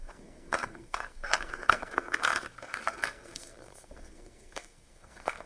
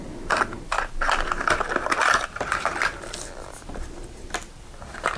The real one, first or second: second